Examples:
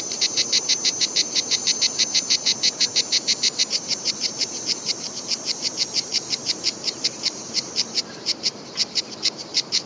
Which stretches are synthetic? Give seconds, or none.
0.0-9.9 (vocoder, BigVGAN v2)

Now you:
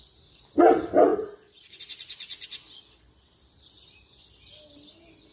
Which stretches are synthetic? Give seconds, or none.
none

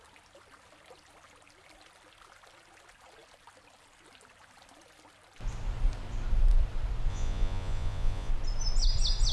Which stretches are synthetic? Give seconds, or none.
7.1-8.3 (vocoder, Vocos)

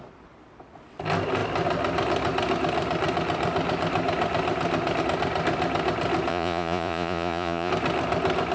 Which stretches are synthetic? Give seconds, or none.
6.3-7.7 (vocoder, Vocos)